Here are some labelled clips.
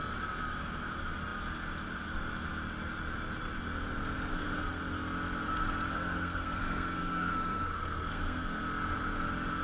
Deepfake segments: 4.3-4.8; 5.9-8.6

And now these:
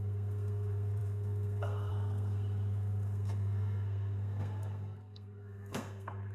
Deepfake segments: 0.0-6.3

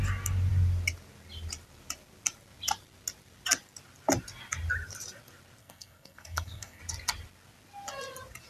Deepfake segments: 5.6-6.8

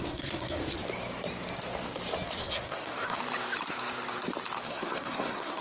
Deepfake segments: 0.0-0.6; 2.4-3.2; 4.6-5.6